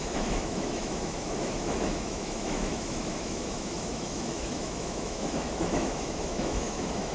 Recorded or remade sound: remade